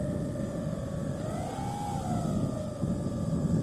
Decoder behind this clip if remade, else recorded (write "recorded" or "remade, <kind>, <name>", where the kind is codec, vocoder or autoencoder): recorded